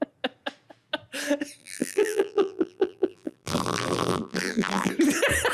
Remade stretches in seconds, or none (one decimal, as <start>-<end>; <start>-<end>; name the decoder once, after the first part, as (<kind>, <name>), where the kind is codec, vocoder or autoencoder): 1.6-4.9 (vocoder, BigVGAN v2)